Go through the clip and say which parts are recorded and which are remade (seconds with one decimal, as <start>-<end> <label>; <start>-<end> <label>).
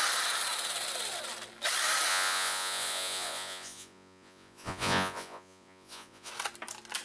0.0-2.1 recorded; 2.1-6.3 remade; 6.3-7.0 recorded